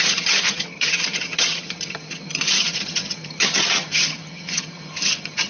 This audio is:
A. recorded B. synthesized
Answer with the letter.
B